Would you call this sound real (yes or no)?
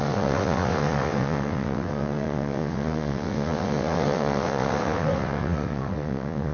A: no